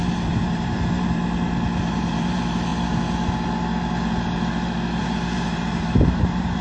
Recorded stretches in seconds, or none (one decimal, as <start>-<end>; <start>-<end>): 1.2-1.8; 2.7-5.0